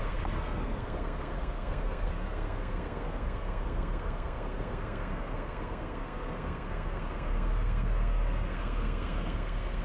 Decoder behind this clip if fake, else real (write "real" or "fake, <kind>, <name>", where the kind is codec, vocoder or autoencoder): fake, codec, SNAC